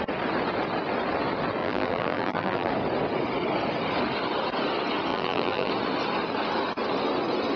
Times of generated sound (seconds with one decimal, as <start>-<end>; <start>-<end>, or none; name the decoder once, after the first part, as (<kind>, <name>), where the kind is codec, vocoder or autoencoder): 1.6-2.7 (vocoder, BigVGAN v2); 5.1-5.7